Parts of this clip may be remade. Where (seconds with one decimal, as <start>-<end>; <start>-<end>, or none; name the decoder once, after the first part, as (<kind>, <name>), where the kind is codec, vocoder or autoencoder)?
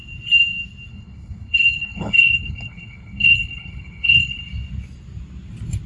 0.9-4.4 (codec, HILCodec)